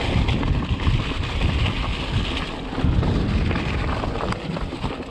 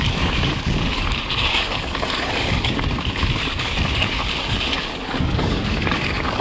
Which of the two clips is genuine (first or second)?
first